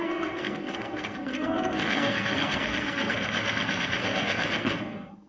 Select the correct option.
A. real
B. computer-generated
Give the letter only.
B